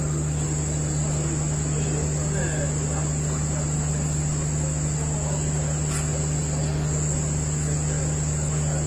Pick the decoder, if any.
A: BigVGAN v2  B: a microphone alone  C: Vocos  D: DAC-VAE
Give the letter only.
B